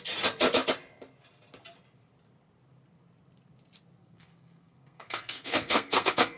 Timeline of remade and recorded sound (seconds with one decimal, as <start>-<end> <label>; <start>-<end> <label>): 0.0-4.0 recorded; 4.0-6.4 remade